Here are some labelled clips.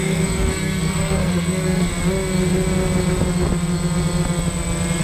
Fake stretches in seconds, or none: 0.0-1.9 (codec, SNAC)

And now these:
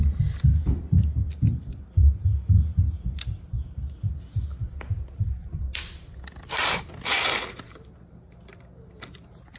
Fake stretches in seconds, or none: none

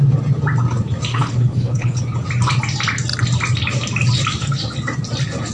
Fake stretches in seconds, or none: 1.1-2.0 (codec, HILCodec)

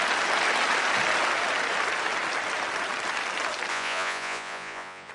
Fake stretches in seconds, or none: 3.7-5.1 (vocoder, Vocos)

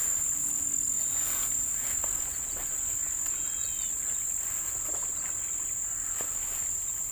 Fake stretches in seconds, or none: none

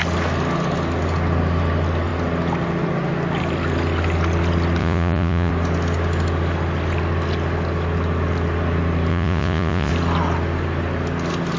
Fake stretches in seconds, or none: 4.8-5.5 (vocoder, Vocos); 9.1-9.9

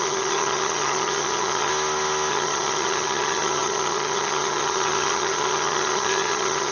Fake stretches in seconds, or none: 0.0-1.7 (vocoder, HiFi-GAN); 2.3-6.7

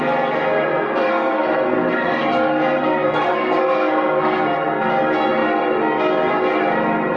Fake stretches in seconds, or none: 0.7-4.9 (codec, SNAC)